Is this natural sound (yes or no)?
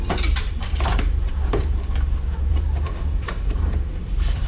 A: no